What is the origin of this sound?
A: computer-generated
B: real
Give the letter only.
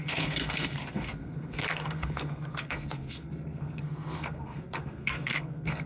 A